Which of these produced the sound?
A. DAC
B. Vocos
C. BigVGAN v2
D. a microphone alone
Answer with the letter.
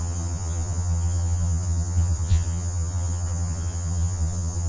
B